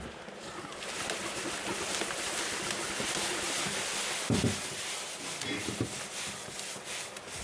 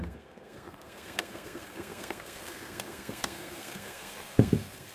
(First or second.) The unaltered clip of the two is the first